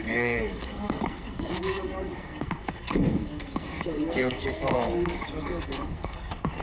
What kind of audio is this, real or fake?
fake